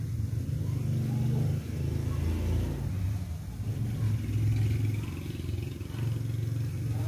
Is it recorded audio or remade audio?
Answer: recorded